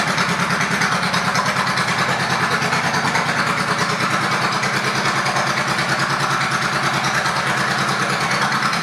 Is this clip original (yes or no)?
yes